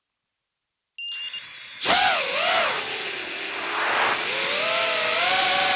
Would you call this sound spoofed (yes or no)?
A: no